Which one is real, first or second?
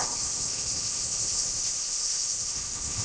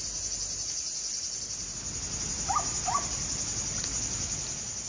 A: second